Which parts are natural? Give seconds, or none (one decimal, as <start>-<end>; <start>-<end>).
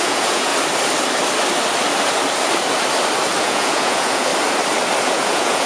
0.5-3.4; 4.3-5.0